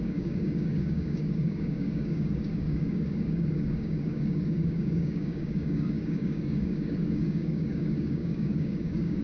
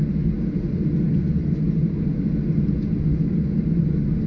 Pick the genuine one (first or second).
second